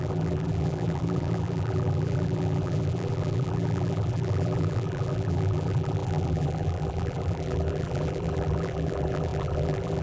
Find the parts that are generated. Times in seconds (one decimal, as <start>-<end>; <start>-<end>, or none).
0.0-10.0